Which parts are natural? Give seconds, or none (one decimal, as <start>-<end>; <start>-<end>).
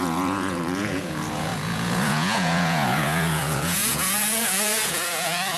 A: none